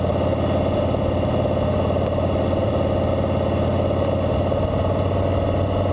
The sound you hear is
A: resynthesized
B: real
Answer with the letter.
B